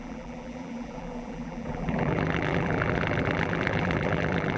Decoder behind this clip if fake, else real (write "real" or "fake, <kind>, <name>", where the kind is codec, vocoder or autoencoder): fake, vocoder, BigVGAN v2